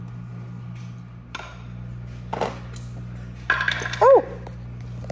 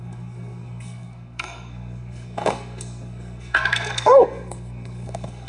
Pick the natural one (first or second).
first